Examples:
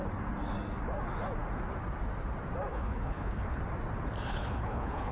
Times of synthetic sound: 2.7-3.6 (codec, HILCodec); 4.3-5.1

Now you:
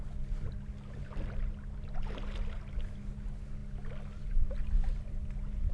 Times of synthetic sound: none

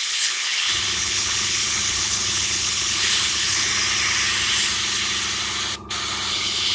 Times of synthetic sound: 0.0-3.7 (codec, HILCodec); 6.3-6.7